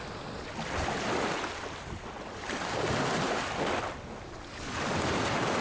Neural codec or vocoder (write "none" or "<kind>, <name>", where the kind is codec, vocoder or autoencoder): none